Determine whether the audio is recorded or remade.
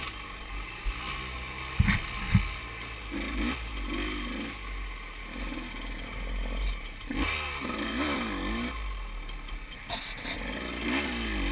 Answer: recorded